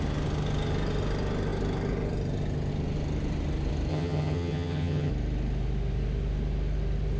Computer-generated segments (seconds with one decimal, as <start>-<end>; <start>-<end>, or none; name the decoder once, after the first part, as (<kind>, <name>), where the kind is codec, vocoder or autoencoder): 3.9-5.1 (vocoder, HiFi-GAN)